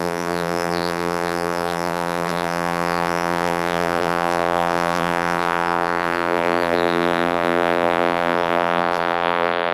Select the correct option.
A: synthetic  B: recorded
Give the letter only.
A